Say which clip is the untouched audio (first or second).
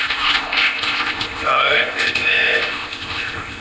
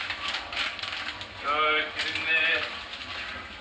second